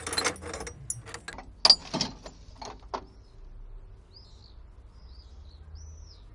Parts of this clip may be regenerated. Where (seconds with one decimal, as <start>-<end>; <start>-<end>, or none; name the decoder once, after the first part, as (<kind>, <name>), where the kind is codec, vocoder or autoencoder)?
none